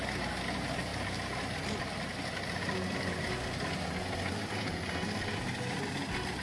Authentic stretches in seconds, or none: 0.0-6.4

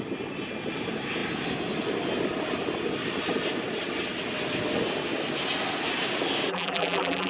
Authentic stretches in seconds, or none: 0.0-6.5